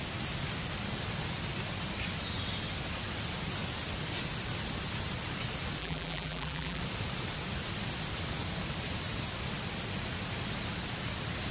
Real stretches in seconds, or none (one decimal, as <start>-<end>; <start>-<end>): 0.0-5.8; 6.8-11.5